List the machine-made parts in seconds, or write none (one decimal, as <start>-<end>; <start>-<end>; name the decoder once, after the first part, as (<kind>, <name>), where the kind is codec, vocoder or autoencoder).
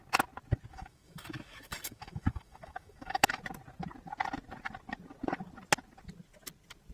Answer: 0.7-3.4 (autoencoder, DAC-VAE)